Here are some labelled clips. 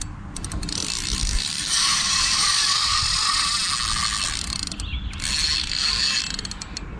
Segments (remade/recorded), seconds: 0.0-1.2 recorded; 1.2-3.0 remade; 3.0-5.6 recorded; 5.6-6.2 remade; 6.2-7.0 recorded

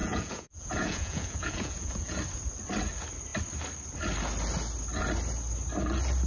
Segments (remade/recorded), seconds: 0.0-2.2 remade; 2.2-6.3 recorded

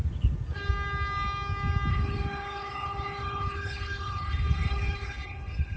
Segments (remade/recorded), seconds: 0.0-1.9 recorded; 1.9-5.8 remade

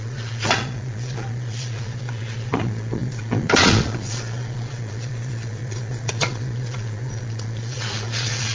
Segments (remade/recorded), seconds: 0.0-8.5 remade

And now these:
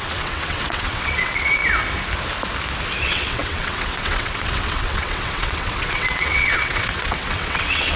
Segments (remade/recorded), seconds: 0.0-1.6 remade; 1.6-3.0 recorded; 3.0-8.0 remade

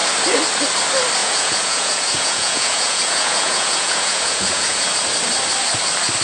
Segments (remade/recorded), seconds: 0.0-1.2 recorded; 1.2-4.9 remade; 4.9-6.2 recorded